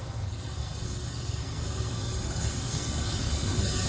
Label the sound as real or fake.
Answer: fake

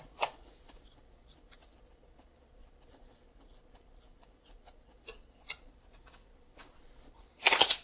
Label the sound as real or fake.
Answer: fake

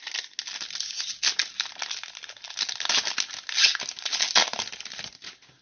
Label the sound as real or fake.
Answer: real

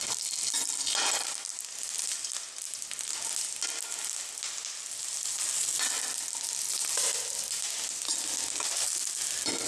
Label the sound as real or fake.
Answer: real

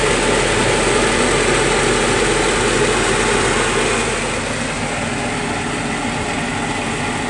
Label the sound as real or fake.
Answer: real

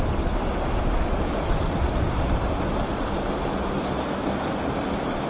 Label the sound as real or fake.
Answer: real